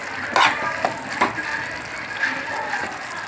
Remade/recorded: recorded